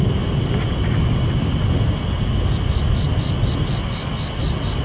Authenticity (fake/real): real